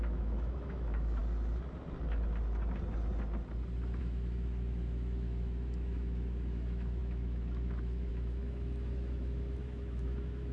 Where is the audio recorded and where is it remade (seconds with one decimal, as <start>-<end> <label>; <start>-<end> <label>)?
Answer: 0.0-1.2 remade; 1.2-4.0 recorded; 4.0-10.5 remade

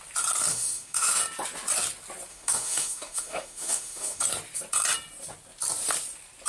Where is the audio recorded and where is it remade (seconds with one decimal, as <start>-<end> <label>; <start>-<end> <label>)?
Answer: 0.0-0.5 recorded; 0.5-1.2 remade; 1.2-2.3 recorded; 2.3-4.2 remade; 4.2-6.5 recorded

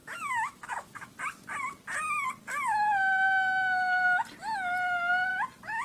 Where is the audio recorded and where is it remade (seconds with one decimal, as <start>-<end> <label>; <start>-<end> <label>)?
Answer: 0.0-1.2 remade; 1.2-5.8 recorded

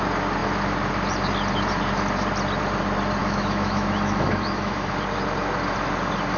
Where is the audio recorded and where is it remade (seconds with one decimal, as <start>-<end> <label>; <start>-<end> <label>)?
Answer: 0.0-3.2 recorded; 3.2-4.9 remade; 4.9-6.4 recorded

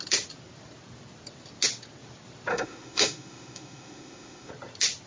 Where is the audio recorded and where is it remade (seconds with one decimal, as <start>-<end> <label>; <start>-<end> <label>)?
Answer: 0.0-2.5 recorded; 2.5-4.5 remade; 4.5-5.1 recorded

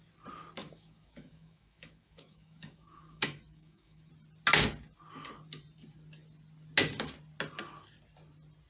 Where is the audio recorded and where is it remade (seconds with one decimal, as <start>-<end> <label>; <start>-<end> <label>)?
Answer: 0.0-0.6 recorded; 0.6-4.1 remade; 4.1-8.7 recorded

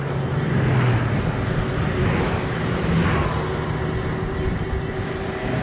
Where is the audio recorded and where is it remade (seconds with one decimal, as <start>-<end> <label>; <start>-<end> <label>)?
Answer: 0.0-2.0 recorded; 2.0-2.6 remade; 2.6-5.6 recorded